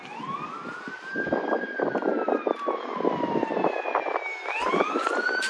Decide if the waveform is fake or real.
real